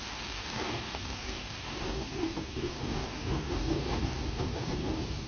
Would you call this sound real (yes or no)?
no